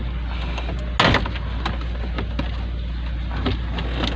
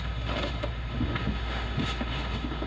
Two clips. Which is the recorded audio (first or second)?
first